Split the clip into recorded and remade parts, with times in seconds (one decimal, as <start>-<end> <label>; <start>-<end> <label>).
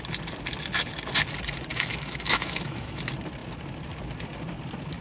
0.0-1.7 recorded; 1.7-3.0 remade; 3.0-5.0 recorded